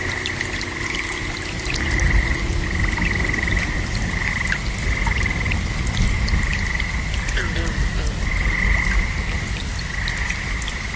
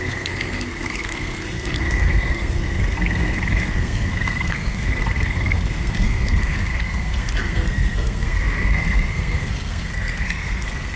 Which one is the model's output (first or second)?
second